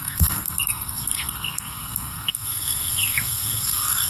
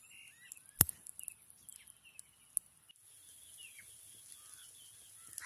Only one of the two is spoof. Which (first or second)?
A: first